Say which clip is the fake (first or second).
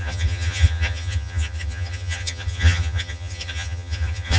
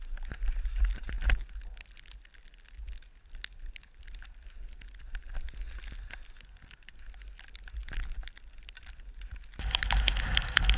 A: first